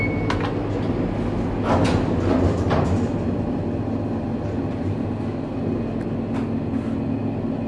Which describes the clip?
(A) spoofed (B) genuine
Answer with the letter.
B